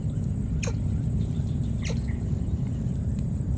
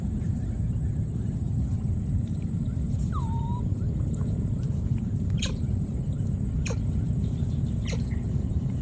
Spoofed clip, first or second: second